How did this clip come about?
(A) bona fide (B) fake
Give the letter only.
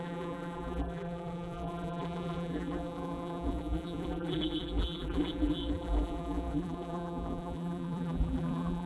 B